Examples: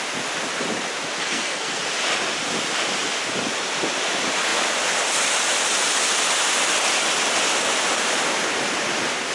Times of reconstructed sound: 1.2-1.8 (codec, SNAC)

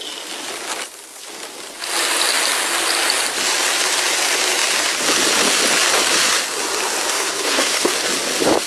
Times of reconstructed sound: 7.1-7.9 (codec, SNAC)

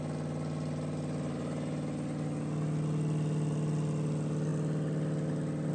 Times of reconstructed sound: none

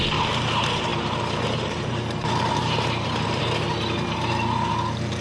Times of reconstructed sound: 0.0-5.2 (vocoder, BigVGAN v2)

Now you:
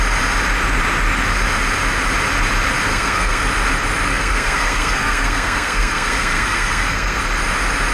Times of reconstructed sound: 2.9-3.5 (codec, SNAC); 4.1-7.2

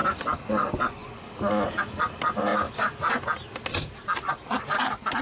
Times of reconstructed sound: none

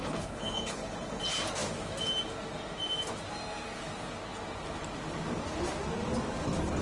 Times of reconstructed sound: 0.0-1.2 (codec, HILCodec)

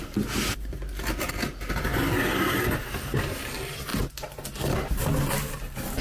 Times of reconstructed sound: none